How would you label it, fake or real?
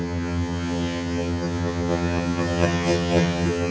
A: fake